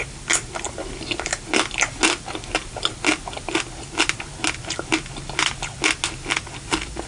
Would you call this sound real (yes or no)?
yes